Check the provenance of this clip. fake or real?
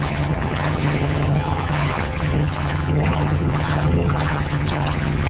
fake